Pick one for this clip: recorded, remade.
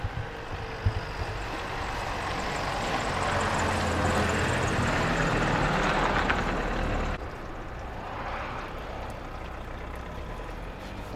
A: recorded